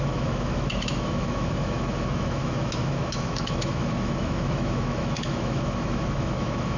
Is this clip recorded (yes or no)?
no